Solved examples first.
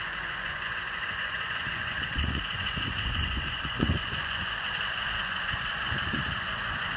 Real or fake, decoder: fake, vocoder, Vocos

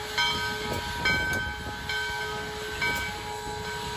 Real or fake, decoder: real